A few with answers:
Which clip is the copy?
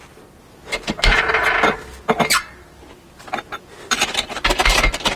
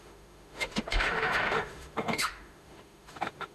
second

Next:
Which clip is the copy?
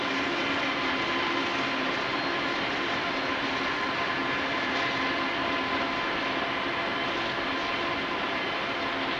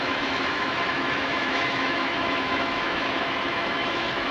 second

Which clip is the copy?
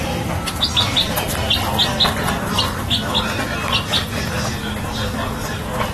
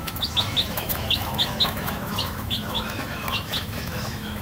second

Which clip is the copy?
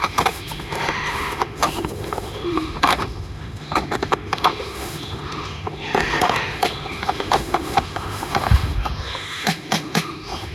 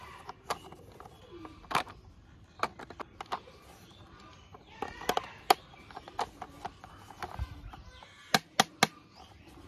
first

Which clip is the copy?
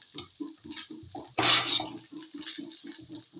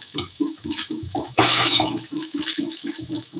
second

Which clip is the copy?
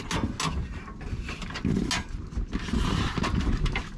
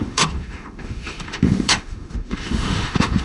second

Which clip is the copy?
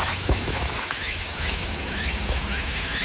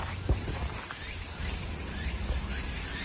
first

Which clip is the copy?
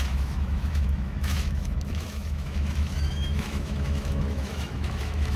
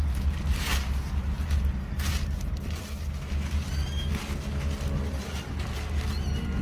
first